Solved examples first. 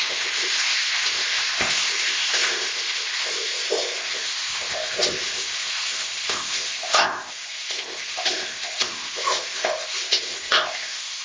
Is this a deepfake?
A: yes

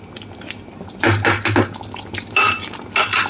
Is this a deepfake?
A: no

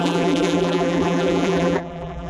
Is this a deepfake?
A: yes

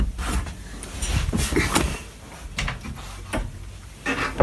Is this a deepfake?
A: no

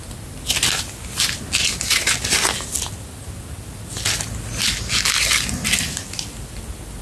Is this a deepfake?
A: no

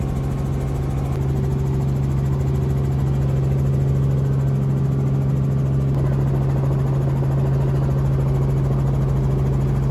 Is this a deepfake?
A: no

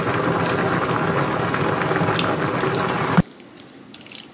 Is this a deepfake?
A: no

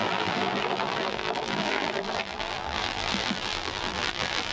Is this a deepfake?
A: yes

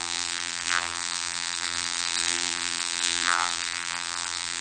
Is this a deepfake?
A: yes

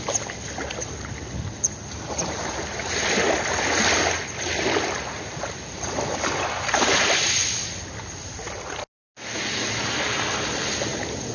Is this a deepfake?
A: no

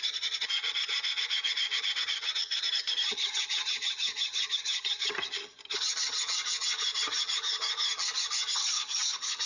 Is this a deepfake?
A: yes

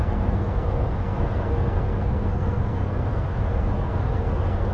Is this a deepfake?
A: yes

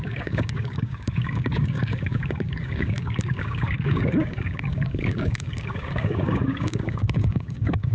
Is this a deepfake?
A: yes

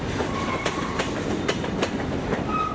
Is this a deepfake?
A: yes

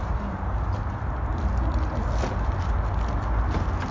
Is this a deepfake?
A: no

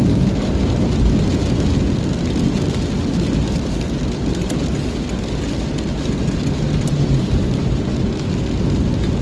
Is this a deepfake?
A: no